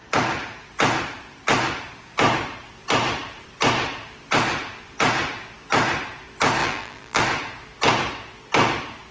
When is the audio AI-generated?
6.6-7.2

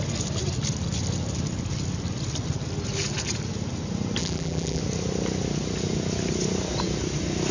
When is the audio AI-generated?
4.2-4.8